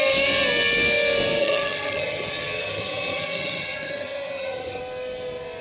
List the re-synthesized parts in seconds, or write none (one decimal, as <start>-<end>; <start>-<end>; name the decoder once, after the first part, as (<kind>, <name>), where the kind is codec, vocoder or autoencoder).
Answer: 1.4-4.8 (vocoder, HiFi-GAN)